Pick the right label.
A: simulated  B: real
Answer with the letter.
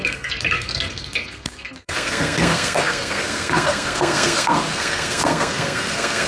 A